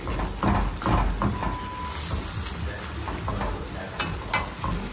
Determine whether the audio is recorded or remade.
recorded